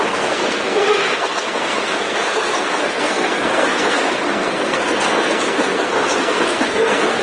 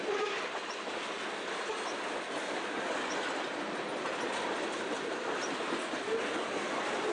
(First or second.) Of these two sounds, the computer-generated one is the first